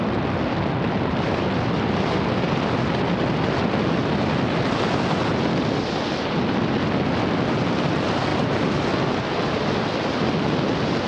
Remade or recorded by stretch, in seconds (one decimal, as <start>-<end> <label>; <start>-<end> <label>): 0.0-11.1 recorded